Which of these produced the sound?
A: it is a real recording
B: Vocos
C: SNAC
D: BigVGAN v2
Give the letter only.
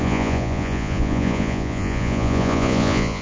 B